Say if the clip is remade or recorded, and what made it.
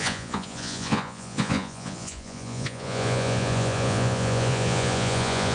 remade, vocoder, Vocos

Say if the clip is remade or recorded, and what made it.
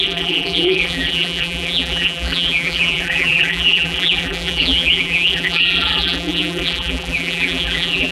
remade, vocoder, BigVGAN v2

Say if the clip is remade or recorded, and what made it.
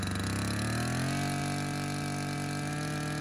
recorded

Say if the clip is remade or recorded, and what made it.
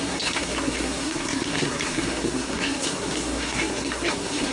remade, codec, SNAC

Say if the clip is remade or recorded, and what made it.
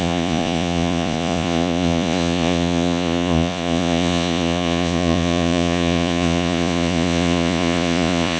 remade, vocoder, Vocos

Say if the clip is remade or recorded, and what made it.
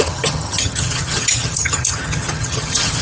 remade, vocoder, HiFi-GAN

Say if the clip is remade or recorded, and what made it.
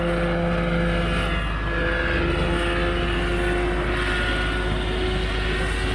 recorded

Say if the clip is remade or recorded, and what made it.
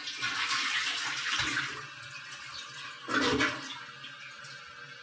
recorded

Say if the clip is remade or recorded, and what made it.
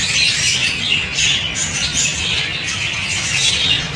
recorded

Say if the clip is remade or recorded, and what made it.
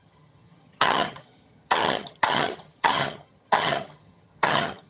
remade, vocoder, HiFi-GAN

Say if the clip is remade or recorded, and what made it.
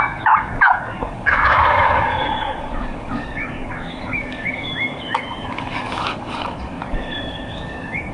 remade, codec, DAC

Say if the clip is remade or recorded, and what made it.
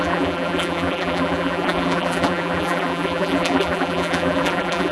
remade, vocoder, BigVGAN v2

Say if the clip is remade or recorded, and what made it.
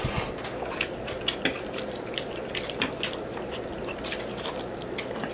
remade, vocoder, BigVGAN v2